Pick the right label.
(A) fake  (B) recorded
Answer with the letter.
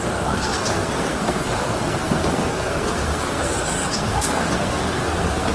A